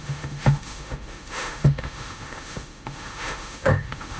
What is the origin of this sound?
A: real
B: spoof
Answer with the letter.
B